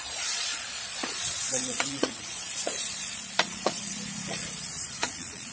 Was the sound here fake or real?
fake